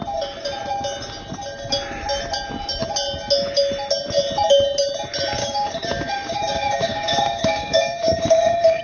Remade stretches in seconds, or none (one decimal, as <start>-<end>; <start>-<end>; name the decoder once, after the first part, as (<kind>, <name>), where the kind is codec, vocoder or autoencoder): 5.4-8.8 (codec, DAC)